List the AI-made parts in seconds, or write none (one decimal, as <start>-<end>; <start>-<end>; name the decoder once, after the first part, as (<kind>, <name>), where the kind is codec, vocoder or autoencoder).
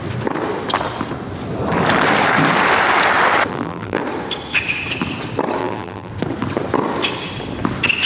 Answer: 3.5-4.0 (vocoder, BigVGAN v2); 5.6-6.1